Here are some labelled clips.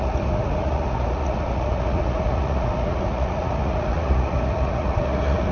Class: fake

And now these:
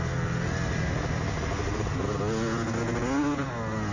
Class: real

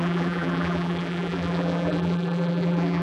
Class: fake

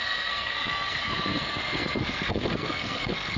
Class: fake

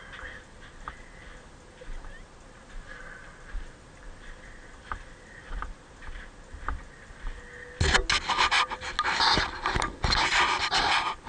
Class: real